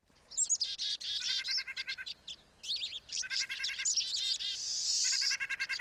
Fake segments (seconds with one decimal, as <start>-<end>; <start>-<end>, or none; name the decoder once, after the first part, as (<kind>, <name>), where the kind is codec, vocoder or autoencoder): none